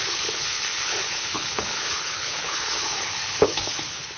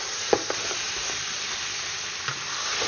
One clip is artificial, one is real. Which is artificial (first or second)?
first